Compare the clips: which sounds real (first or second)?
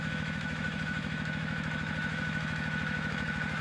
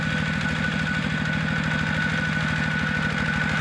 second